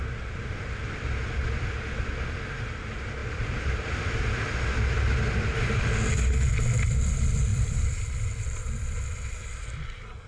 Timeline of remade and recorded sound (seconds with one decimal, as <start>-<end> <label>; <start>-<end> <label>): 0.0-3.2 recorded; 3.2-4.0 remade; 4.0-7.5 recorded; 7.5-8.0 remade; 8.0-10.3 recorded